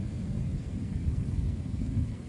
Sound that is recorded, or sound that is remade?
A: remade